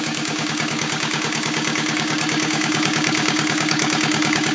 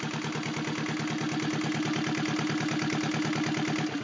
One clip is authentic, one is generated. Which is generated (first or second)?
first